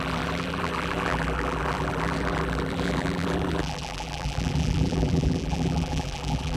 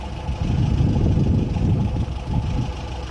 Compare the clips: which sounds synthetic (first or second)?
first